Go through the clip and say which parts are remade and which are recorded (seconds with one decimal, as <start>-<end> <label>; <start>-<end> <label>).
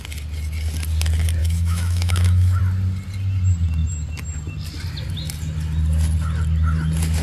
0.0-1.4 recorded; 1.4-2.6 remade; 2.6-7.2 recorded